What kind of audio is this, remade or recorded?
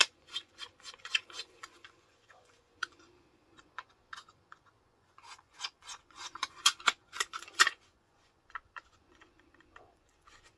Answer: remade